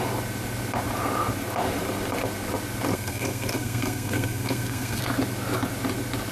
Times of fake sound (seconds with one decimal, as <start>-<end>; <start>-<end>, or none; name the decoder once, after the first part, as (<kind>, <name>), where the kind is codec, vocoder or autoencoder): 2.9-5.0 (codec, SNAC)